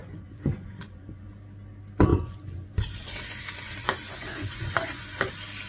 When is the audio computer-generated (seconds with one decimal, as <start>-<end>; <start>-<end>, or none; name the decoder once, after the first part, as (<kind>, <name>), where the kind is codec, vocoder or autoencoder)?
0.0-1.3 (vocoder, Vocos); 2.1-5.3